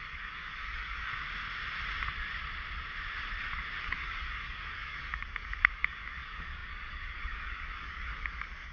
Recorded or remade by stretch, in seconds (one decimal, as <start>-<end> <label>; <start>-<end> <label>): 0.0-1.1 remade; 1.1-3.8 recorded; 3.8-8.7 remade